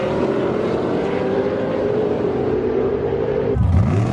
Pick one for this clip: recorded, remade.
remade